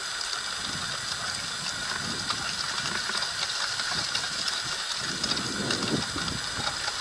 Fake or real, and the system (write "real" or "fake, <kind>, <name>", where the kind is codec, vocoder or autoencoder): real